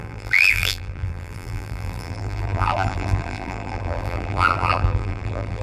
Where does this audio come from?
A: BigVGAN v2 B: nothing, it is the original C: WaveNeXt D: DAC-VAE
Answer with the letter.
A